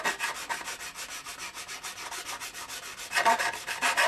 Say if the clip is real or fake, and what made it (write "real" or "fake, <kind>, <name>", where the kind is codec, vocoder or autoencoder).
real